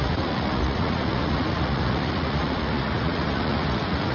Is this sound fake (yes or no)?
yes